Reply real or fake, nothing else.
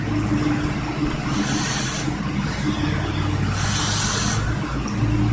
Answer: real